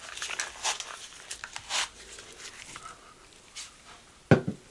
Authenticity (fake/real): real